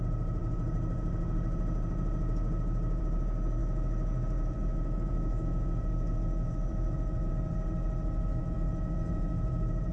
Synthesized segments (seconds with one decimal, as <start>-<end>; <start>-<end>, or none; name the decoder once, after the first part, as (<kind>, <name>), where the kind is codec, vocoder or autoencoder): 3.6-7.3 (autoencoder, DAC-VAE); 8.4-9.9